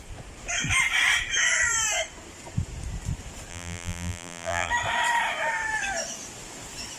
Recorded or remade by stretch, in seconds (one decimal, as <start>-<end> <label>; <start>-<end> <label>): 0.0-3.5 recorded; 3.5-4.7 remade; 4.7-7.0 recorded